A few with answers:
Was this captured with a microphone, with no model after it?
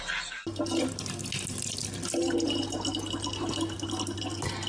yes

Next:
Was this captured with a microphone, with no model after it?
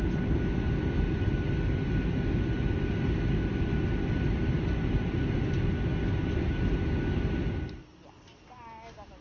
yes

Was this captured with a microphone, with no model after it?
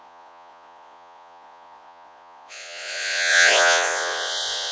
no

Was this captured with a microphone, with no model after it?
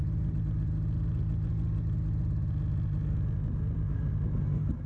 yes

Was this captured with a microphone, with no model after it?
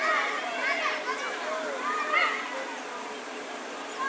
yes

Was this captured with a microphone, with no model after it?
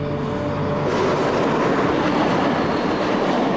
yes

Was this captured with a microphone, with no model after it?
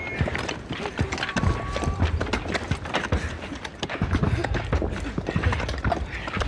yes